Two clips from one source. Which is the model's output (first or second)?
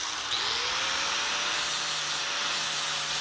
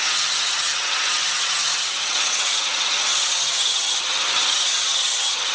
second